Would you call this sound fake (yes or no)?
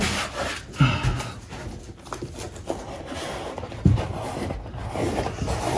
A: no